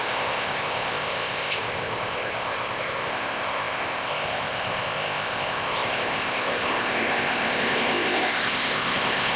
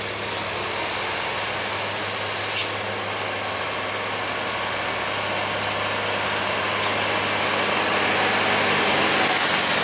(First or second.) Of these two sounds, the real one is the second